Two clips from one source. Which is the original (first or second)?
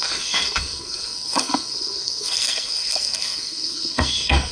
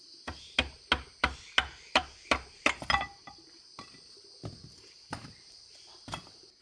second